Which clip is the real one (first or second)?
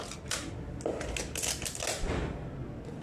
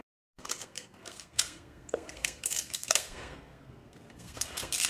first